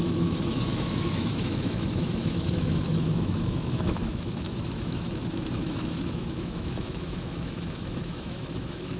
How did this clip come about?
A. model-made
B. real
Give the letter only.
A